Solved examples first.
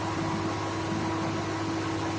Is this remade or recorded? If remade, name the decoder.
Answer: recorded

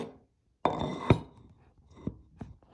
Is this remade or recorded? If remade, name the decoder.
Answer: recorded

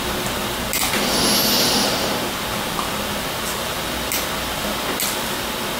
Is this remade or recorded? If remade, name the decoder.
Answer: recorded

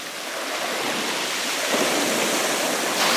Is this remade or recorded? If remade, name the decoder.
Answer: recorded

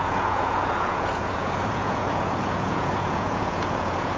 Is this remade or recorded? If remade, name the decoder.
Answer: remade, vocoder, Vocos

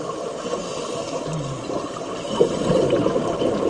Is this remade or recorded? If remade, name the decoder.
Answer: recorded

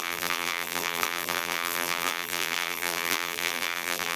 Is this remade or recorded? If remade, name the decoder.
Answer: remade, vocoder, BigVGAN v2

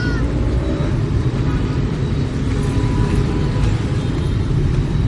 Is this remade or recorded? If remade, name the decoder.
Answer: remade, vocoder, BigVGAN v2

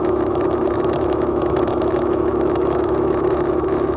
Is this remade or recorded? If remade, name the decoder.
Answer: remade, autoencoder, DAC-VAE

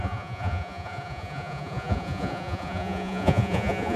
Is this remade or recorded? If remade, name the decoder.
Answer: remade, vocoder, Vocos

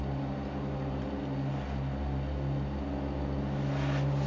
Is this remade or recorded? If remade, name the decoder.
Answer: recorded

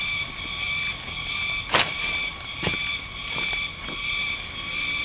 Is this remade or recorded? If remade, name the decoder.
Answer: recorded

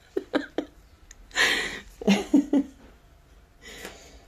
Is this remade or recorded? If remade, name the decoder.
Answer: recorded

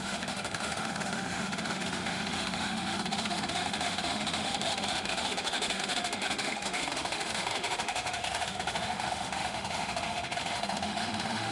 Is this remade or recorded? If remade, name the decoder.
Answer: remade, autoencoder, DAC-VAE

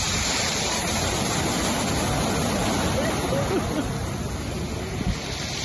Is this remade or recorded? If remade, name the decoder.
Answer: recorded